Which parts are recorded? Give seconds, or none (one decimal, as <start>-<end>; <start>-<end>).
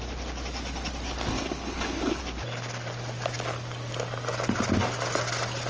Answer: 0.0-1.3; 2.2-5.7